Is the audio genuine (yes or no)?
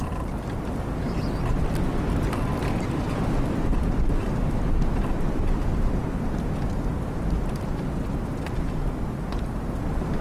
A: yes